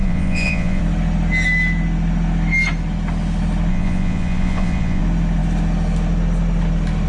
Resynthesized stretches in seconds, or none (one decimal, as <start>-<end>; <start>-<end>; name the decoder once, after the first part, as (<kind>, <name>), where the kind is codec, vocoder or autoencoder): 0.0-0.8 (vocoder, Vocos); 3.7-5.0